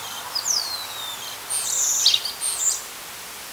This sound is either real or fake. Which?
real